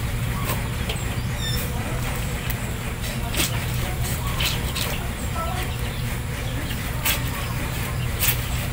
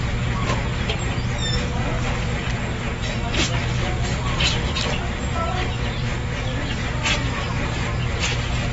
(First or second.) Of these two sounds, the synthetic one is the first